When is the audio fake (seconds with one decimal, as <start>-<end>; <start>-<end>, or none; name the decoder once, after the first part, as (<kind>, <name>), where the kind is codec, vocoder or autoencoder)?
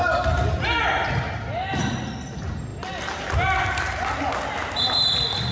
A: none